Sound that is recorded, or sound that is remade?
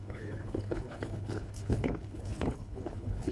remade